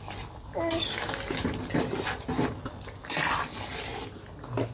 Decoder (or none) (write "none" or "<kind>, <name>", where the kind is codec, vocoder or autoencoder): none